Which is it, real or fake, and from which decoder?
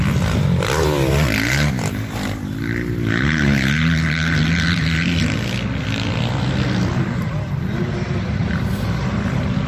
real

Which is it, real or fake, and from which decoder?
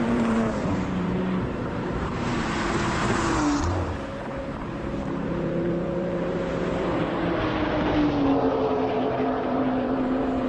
fake, vocoder, BigVGAN v2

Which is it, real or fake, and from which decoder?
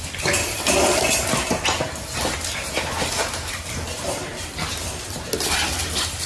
real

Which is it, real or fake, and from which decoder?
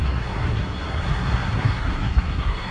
fake, codec, SNAC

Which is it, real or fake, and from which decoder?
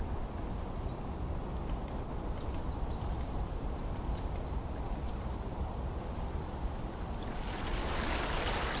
real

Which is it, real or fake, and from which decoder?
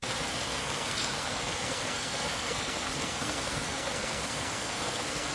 fake, codec, SNAC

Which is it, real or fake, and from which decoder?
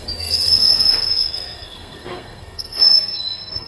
fake, codec, SNAC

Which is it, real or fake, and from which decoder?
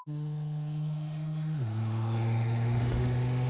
fake, autoencoder, DAC-VAE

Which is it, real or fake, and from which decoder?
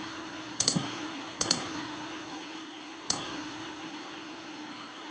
fake, codec, SNAC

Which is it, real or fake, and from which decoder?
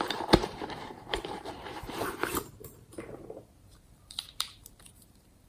fake, vocoder, BigVGAN v2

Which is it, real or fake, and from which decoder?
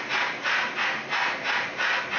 real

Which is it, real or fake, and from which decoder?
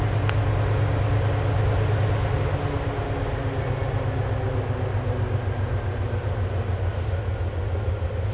real